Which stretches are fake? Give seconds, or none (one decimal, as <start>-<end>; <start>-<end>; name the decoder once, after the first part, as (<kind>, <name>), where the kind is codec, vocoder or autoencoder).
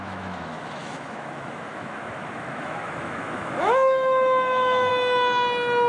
0.0-4.9 (autoencoder, DAC-VAE)